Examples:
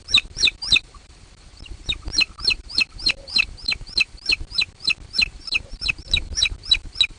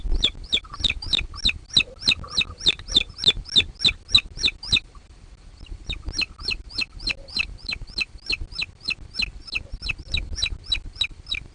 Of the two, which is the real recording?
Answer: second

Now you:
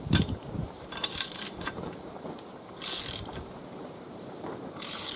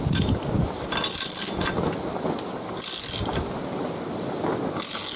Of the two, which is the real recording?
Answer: second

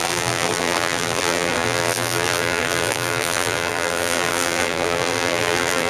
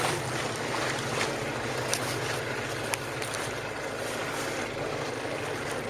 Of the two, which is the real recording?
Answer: second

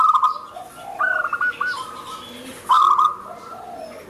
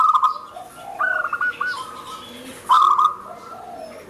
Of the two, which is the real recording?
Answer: second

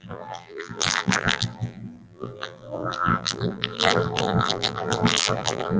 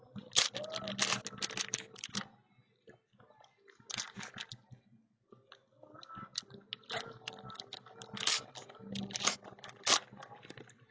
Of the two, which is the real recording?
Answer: second